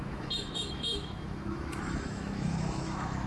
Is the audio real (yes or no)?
no